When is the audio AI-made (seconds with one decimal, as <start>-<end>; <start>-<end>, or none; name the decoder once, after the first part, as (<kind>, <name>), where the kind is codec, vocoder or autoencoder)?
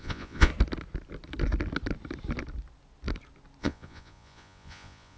0.0-0.5 (vocoder, Vocos); 3.6-5.2